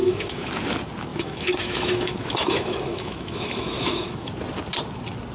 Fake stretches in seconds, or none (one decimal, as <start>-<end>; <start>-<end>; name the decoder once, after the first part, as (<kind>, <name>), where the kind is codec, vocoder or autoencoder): 0.0-0.5 (autoencoder, DAC-VAE); 1.1-4.3